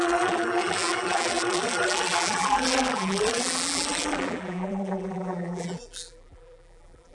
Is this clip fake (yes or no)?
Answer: yes